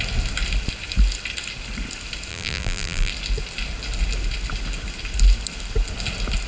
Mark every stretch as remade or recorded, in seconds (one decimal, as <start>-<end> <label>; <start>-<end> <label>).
0.0-2.3 recorded; 2.3-3.1 remade; 3.1-6.5 recorded